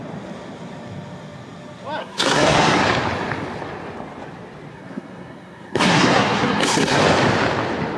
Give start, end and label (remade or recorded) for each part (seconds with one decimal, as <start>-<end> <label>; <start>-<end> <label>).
0.0-2.0 recorded; 2.0-2.8 remade; 2.8-4.7 recorded; 4.7-7.0 remade; 7.0-8.0 recorded